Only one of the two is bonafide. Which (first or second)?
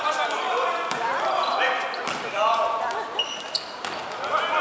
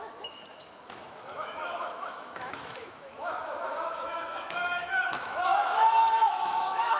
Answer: first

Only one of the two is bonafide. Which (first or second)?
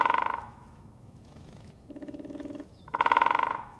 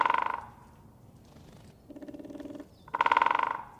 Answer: second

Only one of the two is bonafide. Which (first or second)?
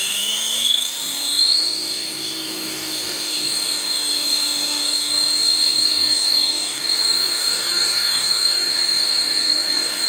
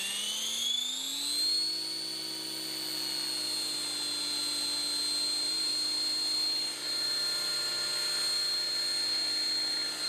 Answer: second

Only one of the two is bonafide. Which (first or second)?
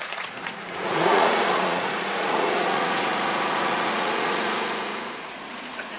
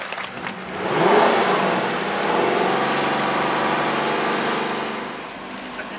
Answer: second